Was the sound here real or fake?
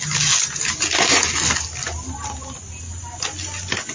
real